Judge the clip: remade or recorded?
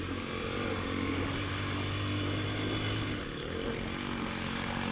recorded